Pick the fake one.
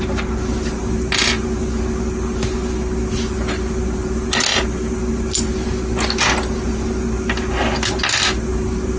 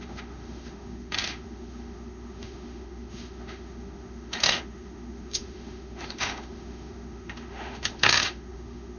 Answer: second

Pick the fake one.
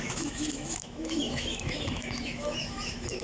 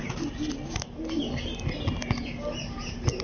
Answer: first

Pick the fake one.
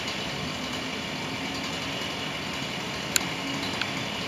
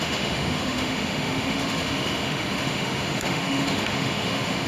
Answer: second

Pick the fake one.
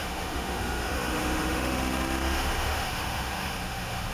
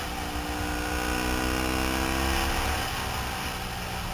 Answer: first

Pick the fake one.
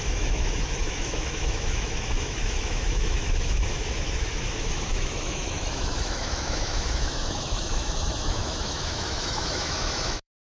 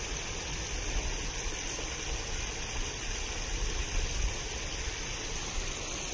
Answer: first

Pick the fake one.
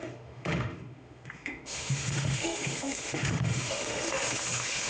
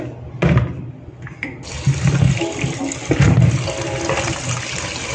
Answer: first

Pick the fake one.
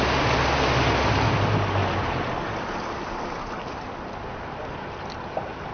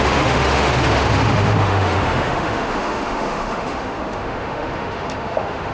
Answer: second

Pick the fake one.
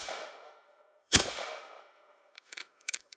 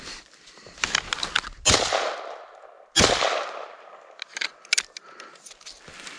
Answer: first